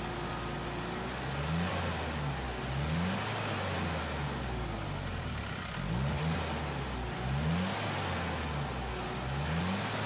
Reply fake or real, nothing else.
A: real